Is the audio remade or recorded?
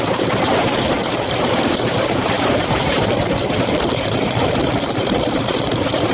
remade